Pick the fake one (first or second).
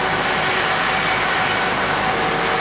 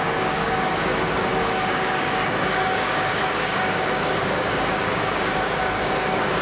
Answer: second